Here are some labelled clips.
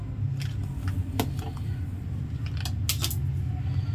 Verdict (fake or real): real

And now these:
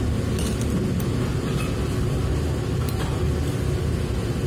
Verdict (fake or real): real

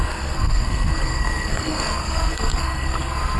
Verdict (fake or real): fake